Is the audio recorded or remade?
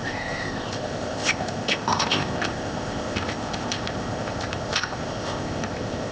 remade